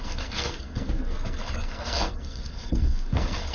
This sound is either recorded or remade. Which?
remade